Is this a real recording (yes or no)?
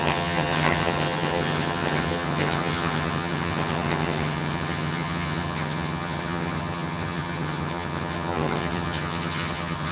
no